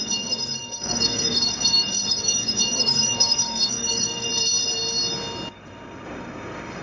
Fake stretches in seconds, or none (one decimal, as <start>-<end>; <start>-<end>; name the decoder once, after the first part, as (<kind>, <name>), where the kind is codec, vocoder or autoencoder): 0.0-4.3 (codec, DAC); 5.5-6.8

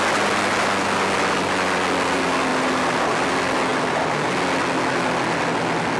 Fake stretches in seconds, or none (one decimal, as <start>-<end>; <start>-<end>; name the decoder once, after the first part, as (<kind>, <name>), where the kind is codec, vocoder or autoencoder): none

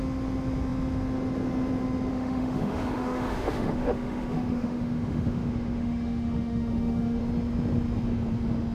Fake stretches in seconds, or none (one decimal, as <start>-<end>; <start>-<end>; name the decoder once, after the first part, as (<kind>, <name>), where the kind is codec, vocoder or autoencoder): 2.1-7.2 (autoencoder, DAC-VAE)

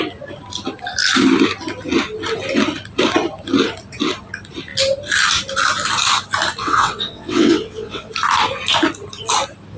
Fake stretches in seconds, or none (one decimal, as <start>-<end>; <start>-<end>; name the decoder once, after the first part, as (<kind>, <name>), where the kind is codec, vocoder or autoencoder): 6.6-8.1 (vocoder, WaveNeXt)

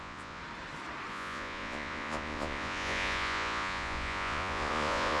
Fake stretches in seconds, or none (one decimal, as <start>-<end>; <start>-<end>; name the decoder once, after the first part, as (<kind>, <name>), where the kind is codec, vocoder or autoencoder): 0.0-0.4 (vocoder, Vocos); 1.1-5.2

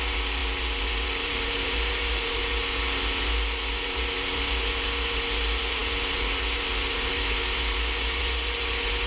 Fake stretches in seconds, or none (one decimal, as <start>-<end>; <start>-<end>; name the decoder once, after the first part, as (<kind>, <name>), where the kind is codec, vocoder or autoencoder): 0.0-9.1 (vocoder, BigVGAN v2)

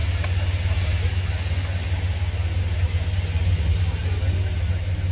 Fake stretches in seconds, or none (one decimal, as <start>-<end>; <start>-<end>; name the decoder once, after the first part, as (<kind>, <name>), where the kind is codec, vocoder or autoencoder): none